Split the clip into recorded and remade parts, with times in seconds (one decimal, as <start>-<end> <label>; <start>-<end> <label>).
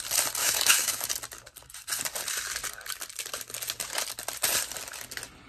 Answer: 0.0-0.4 recorded; 0.4-1.1 remade; 1.1-5.5 recorded